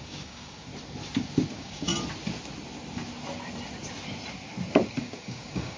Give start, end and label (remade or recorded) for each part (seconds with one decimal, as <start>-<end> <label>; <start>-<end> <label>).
0.0-0.7 remade; 0.7-1.5 recorded; 1.5-1.9 remade; 1.9-5.0 recorded; 5.0-5.8 remade

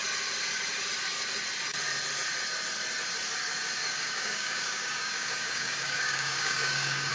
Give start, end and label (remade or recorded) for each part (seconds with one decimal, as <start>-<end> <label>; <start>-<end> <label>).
0.0-3.8 recorded; 3.8-7.1 remade